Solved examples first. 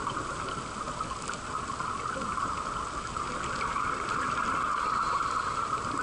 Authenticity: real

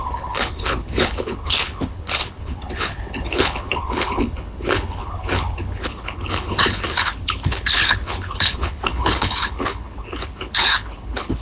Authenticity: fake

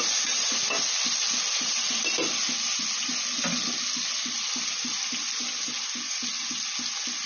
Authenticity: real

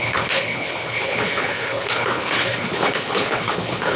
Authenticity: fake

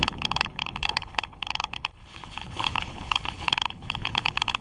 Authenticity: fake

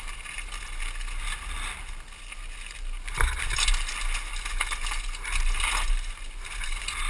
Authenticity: real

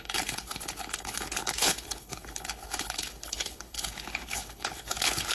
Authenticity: fake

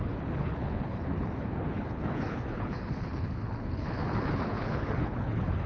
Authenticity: fake